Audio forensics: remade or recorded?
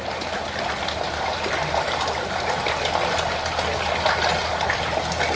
recorded